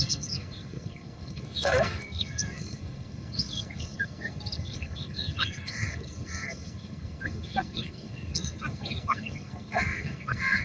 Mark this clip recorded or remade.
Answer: remade